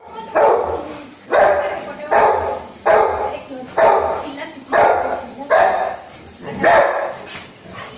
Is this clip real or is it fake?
fake